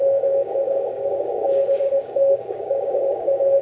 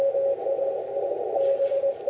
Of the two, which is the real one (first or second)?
second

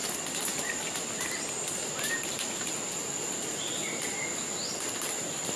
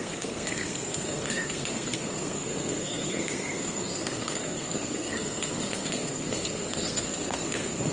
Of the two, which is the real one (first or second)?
first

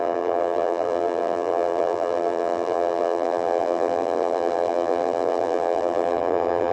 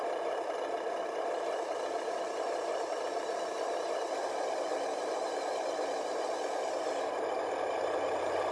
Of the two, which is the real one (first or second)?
second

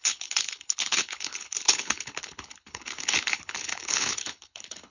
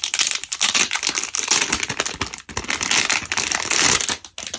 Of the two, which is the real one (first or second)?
second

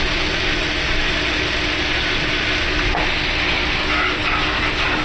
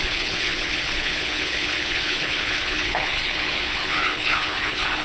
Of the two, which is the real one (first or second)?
first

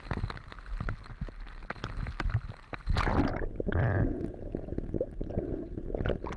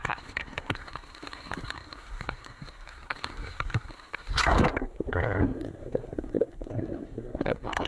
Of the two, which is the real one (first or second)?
first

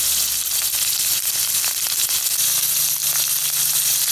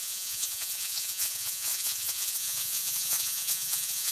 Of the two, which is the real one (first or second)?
first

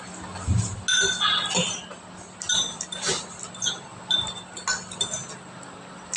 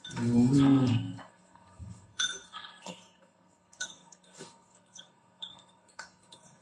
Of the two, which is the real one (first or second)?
first